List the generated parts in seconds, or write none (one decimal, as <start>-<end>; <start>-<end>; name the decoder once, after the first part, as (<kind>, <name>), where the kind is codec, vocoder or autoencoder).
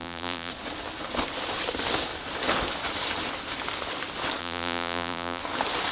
0.0-0.5 (vocoder, BigVGAN v2); 4.4-5.4